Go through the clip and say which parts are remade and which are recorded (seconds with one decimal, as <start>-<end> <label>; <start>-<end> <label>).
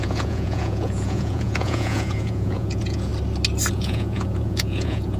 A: 0.0-3.1 remade; 3.1-3.7 recorded; 3.7-5.2 remade